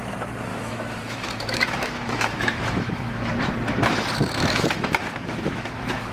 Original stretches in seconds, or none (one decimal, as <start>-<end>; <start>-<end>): 0.0-0.5; 3.4-4.2